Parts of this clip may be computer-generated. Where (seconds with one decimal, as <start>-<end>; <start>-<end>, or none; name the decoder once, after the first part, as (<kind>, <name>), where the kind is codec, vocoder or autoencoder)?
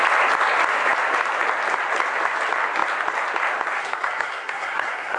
3.8-5.2 (codec, SNAC)